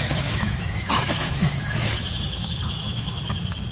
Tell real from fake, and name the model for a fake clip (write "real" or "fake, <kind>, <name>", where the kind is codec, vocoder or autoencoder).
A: fake, autoencoder, DAC-VAE